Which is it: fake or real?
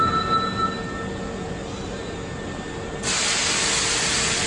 real